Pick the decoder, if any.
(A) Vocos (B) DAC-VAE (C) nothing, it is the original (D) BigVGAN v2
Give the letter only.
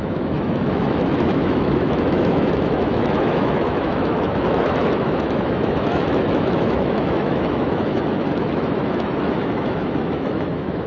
B